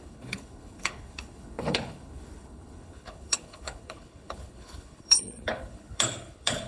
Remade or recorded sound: remade